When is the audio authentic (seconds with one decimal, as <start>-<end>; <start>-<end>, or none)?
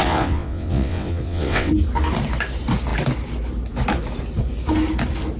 1.7-5.4